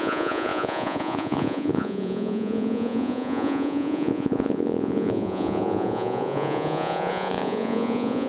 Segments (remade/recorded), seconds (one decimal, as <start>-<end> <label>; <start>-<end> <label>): 0.0-8.3 remade